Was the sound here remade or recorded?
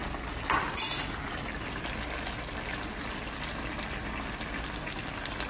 recorded